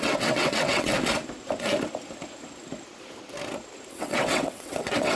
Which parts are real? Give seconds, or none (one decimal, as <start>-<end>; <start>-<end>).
0.9-3.9